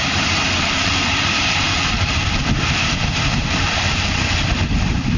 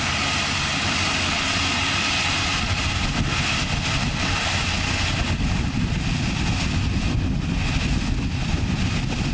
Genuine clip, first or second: second